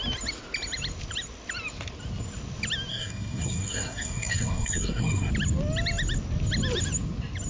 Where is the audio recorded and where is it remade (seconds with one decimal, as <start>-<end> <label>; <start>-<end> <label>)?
0.0-2.9 recorded; 2.9-5.3 remade; 5.3-7.5 recorded